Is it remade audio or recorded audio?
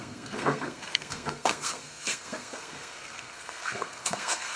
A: remade